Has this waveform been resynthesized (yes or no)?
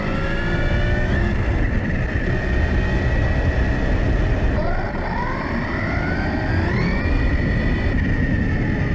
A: no